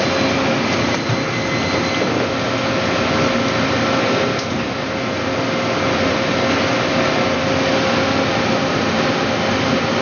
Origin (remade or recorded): recorded